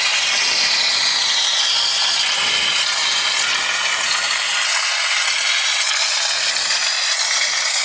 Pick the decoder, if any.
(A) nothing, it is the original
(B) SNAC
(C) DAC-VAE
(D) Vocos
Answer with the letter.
A